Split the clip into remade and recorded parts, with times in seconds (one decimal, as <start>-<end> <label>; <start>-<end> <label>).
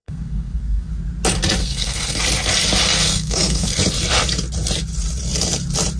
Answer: 0.0-0.9 remade; 0.9-1.6 recorded; 1.6-2.2 remade; 2.2-3.0 recorded; 3.0-3.8 remade; 3.8-6.0 recorded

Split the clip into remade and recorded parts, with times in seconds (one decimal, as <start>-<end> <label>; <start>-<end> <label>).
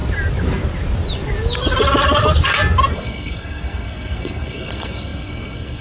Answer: 0.0-2.9 recorded; 2.9-5.8 remade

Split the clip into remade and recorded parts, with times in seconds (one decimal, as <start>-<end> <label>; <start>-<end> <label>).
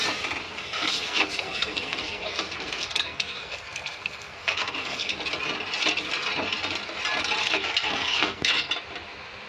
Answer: 0.0-0.5 recorded; 0.5-5.1 remade; 5.1-7.4 recorded; 7.4-8.7 remade; 8.7-9.5 recorded